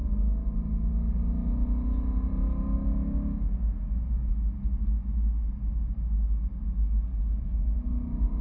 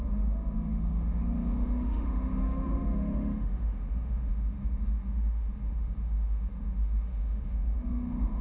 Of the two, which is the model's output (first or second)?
second